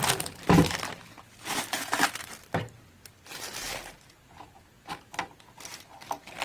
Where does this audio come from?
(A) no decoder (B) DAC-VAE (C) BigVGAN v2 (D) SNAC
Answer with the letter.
A